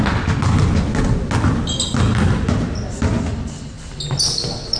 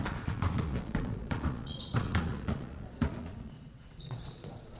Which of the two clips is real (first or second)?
first